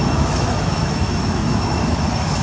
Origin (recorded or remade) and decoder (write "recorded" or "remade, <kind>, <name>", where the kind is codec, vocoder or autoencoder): remade, autoencoder, DAC-VAE